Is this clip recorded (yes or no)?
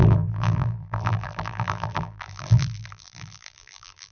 no